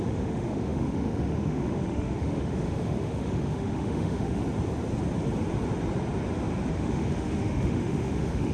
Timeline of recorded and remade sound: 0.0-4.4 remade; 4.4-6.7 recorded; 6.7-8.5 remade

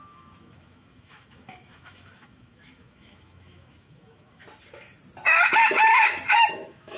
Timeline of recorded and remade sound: 0.0-4.4 remade; 4.4-6.5 recorded; 6.5-7.0 remade

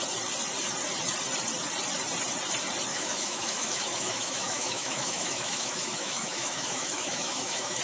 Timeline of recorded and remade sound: 0.0-2.9 recorded; 2.9-7.8 remade

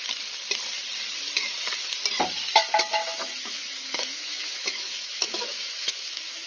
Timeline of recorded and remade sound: 0.0-3.0 recorded; 3.0-6.5 remade

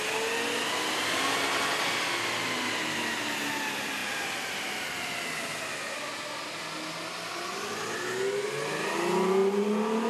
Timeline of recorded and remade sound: 0.0-10.1 recorded

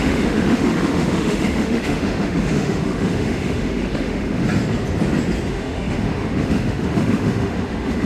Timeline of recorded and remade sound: 0.0-4.4 remade; 4.4-5.5 recorded; 5.5-8.1 remade